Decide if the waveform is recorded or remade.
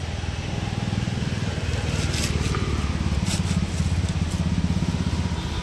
recorded